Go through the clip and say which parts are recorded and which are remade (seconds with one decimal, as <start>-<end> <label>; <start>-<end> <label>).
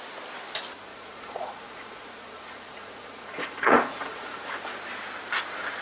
0.0-0.9 recorded; 0.9-4.4 remade; 4.4-5.8 recorded